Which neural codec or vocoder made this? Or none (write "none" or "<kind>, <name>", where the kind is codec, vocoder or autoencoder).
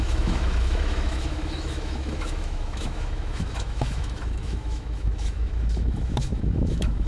autoencoder, DAC-VAE